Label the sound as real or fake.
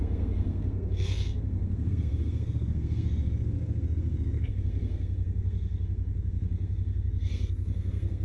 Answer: fake